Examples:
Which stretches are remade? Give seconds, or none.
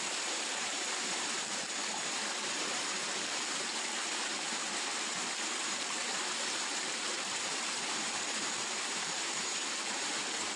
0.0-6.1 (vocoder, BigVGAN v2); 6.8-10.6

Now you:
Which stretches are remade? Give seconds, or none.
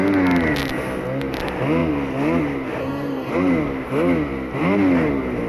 2.8-3.3 (codec, DAC)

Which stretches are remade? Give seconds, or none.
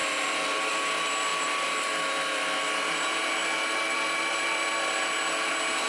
0.0-0.7 (vocoder, BigVGAN v2); 1.3-2.7; 3.4-5.0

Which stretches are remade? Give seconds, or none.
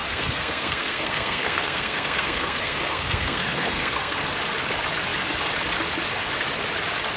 0.0-4.3 (codec, SNAC)